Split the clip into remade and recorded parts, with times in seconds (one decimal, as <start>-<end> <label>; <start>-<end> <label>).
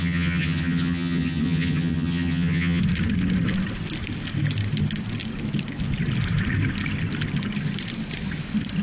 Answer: 0.0-2.8 remade; 2.8-8.8 recorded